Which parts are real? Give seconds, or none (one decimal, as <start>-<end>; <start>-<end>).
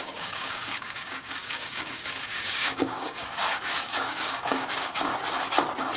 5.1-6.0